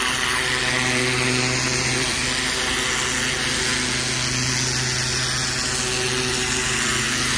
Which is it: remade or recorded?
recorded